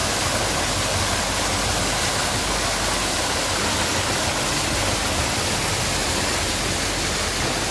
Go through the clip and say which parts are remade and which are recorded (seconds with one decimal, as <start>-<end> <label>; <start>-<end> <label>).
0.0-6.0 recorded; 6.0-6.6 remade; 6.6-7.7 recorded